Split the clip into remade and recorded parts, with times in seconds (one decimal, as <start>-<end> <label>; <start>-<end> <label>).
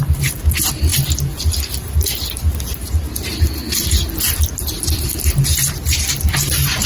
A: 0.0-6.9 recorded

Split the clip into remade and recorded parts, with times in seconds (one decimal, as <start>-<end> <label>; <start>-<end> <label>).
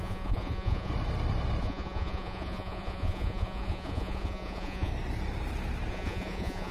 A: 0.0-0.9 remade; 0.9-1.6 recorded; 1.6-4.9 remade; 4.9-5.9 recorded; 5.9-6.7 remade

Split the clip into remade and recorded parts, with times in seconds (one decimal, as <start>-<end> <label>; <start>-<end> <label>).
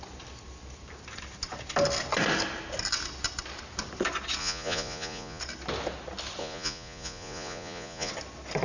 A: 0.0-4.4 recorded; 4.4-5.4 remade; 5.4-6.4 recorded; 6.4-8.1 remade; 8.1-8.6 recorded